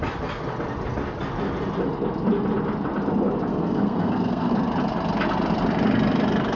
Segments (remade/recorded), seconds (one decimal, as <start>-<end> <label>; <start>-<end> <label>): 0.0-3.5 recorded; 3.5-4.5 remade; 4.5-6.6 recorded